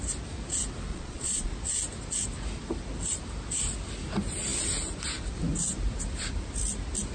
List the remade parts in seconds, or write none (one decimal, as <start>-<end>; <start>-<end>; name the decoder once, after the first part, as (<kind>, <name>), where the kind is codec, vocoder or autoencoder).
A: 0.9-1.5 (vocoder, Vocos)